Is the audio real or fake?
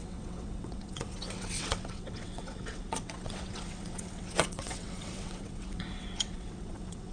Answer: fake